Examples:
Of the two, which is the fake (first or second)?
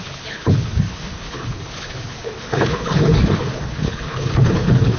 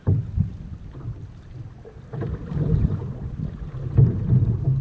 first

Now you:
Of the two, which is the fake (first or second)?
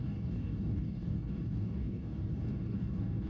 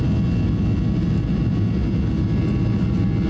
first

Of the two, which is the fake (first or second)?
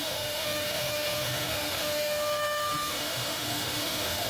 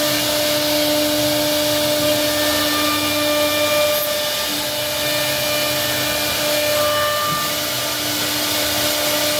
first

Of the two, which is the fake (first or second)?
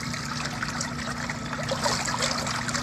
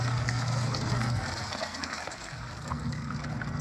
second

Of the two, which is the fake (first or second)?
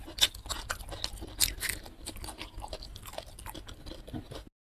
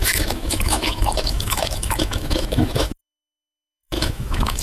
second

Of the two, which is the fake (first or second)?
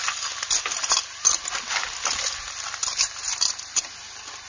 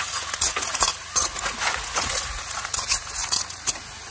second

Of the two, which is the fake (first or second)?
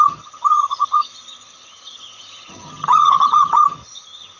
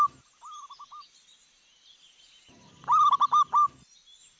first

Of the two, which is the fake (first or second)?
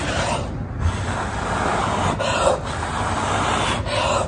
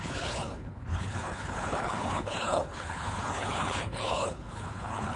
second